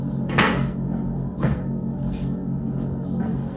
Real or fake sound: fake